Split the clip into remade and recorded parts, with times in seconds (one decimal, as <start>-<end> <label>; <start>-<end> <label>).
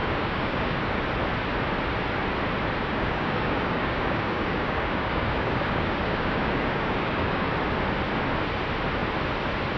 0.0-1.0 remade; 1.0-2.8 recorded; 2.8-7.5 remade; 7.5-9.8 recorded